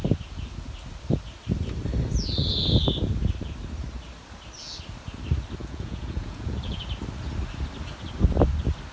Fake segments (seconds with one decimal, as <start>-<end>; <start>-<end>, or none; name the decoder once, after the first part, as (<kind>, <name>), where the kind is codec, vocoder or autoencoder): 5.6-6.8 (vocoder, Vocos)

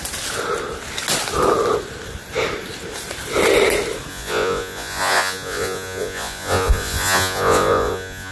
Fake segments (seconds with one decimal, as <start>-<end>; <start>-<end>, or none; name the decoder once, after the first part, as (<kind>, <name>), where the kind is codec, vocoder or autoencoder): 4.1-8.3 (vocoder, Vocos)

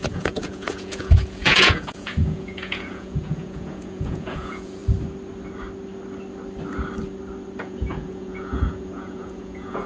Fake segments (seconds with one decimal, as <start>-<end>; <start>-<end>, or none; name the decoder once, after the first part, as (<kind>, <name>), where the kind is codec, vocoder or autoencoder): 0.0-4.8 (vocoder, Vocos); 7.6-9.9

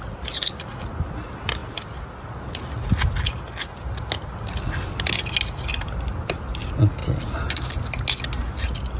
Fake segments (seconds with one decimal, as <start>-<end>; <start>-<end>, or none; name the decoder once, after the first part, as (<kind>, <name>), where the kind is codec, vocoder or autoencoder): none

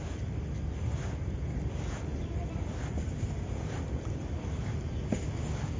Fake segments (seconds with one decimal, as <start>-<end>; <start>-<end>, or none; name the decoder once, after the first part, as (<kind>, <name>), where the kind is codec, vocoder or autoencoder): none

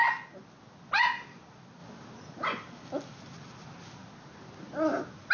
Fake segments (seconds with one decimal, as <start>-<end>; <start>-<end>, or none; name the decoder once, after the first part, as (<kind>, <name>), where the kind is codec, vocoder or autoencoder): none